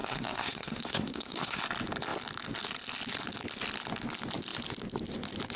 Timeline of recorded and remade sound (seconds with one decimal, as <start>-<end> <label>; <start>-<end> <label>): 0.0-1.6 remade; 1.6-5.6 recorded